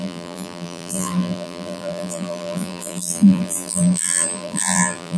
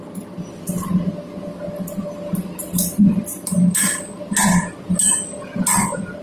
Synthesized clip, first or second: first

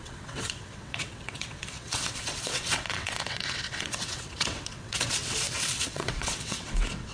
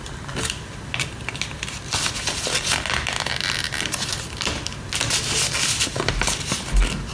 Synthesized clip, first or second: first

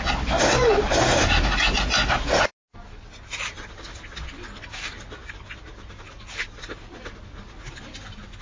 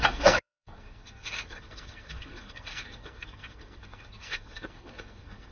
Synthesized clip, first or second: second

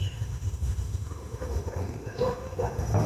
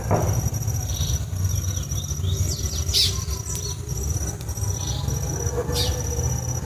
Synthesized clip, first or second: first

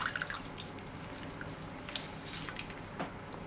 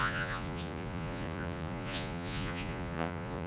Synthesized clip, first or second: second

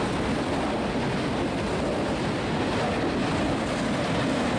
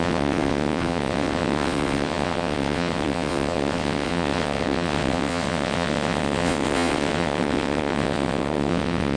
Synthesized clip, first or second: second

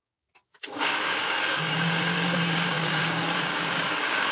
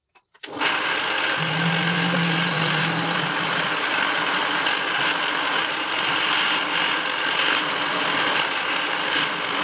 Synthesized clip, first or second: first